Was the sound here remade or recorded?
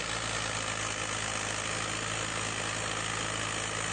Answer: recorded